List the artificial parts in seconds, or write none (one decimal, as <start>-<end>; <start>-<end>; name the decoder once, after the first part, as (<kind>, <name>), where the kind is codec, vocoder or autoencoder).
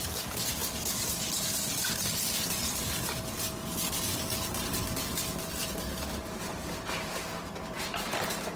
0.0-0.6 (vocoder, BigVGAN v2); 4.0-8.6